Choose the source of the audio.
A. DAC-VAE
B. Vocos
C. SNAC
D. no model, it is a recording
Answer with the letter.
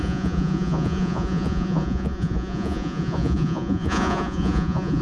B